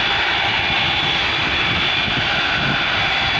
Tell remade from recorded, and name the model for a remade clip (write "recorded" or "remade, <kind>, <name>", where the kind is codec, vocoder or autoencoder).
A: recorded